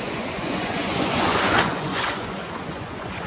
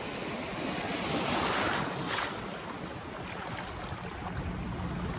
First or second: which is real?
second